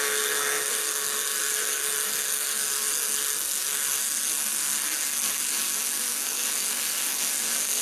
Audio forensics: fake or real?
fake